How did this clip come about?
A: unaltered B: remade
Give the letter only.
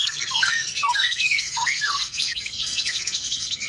B